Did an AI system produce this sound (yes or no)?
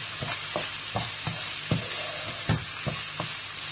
no